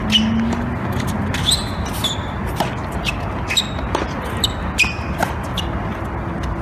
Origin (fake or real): real